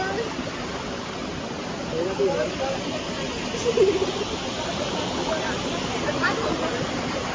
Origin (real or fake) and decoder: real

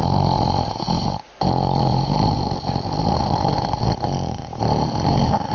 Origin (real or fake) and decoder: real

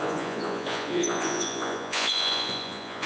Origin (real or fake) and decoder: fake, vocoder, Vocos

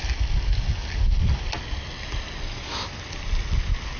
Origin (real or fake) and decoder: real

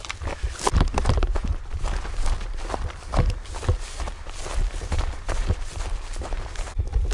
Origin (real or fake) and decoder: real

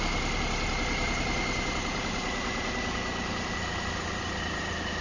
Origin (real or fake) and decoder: real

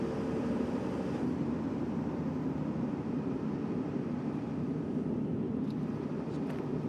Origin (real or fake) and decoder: fake, vocoder, BigVGAN v2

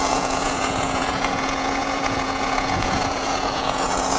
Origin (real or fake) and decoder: fake, vocoder, Vocos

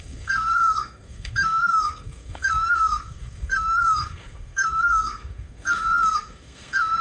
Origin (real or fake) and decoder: fake, codec, SNAC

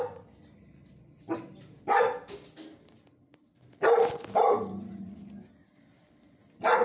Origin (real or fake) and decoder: real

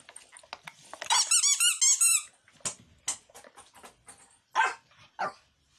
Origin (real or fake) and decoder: real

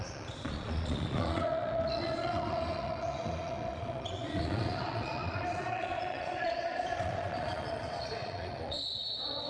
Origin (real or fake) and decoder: fake, vocoder, Vocos